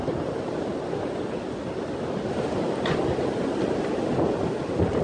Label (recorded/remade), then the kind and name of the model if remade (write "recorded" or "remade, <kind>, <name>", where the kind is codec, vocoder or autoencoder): recorded